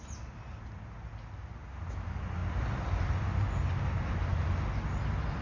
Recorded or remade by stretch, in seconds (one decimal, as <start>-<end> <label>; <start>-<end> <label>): 0.0-5.4 recorded